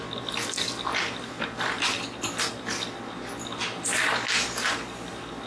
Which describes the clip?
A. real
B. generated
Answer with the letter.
A